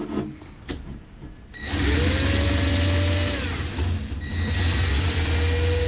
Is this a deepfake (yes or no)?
no